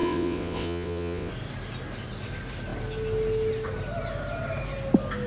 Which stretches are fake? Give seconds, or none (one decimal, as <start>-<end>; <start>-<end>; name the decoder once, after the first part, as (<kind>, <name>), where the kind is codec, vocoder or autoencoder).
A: 0.0-1.3 (vocoder, WaveNeXt)

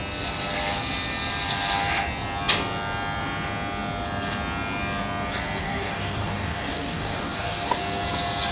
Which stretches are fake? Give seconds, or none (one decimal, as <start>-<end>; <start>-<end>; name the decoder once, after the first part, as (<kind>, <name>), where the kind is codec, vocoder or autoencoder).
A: 5.6-7.8 (codec, DAC)

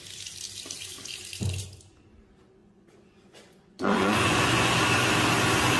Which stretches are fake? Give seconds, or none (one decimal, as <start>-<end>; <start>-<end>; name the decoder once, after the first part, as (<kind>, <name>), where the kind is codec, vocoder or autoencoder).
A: 2.6-4.7 (vocoder, Vocos)

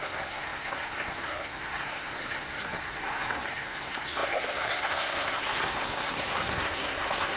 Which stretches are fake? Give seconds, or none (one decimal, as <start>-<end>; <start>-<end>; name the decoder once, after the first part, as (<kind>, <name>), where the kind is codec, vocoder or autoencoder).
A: 0.0-7.4 (codec, SNAC)

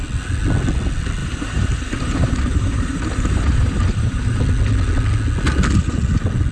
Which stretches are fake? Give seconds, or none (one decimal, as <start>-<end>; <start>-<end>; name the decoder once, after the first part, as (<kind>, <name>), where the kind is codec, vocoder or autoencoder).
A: 1.2-4.4 (vocoder, BigVGAN v2)

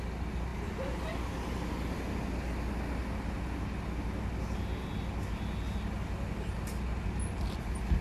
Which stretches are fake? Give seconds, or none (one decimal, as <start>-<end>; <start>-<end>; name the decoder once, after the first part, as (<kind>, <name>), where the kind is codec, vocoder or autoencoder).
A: none

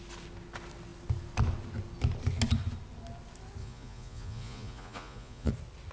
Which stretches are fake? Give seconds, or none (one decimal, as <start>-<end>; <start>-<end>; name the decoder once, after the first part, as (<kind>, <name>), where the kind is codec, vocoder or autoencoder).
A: 3.6-5.5 (vocoder, Vocos)

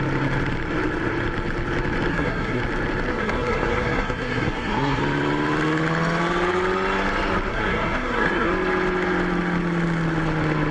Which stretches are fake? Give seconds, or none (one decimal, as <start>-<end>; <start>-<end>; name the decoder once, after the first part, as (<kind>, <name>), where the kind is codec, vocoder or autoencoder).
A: 2.1-2.6 (codec, SNAC); 3.1-5.0; 7.5-8.5